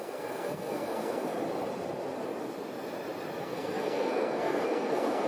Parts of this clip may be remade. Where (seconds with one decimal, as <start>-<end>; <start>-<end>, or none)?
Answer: 0.0-1.3; 3.4-5.3